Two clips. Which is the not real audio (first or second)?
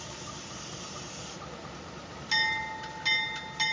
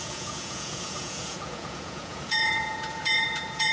second